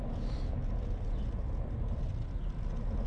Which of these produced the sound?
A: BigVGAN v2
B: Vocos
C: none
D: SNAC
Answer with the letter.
C